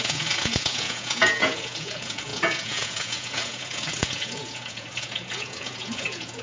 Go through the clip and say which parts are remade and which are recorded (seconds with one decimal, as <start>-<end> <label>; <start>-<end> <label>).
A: 0.0-6.4 remade